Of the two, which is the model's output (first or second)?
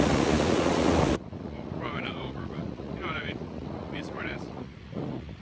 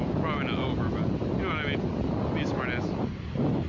first